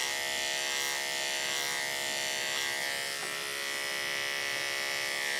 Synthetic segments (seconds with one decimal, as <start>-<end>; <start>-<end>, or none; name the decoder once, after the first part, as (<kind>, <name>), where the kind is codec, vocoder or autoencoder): none